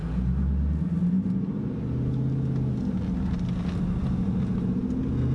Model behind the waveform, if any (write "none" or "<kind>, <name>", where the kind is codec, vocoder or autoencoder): none